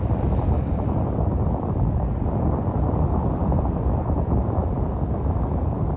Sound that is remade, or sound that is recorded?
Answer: recorded